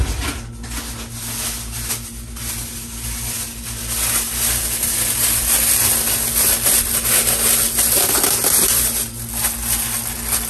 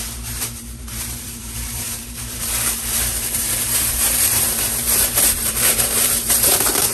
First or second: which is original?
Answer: first